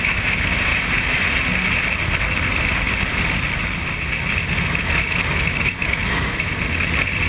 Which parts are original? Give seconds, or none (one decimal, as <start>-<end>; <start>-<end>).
0.7-4.6; 6.5-7.3